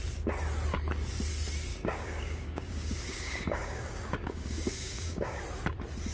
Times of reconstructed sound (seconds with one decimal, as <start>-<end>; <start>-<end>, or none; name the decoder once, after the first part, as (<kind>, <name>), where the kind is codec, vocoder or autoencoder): 1.7-5.4 (codec, DAC)